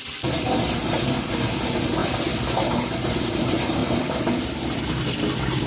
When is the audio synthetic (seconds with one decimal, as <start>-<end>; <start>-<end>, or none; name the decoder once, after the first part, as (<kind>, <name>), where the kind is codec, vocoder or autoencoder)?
none